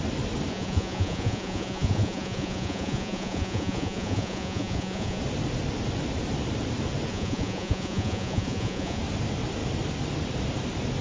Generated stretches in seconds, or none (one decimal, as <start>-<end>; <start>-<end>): 0.5-5.2; 7.1-9.0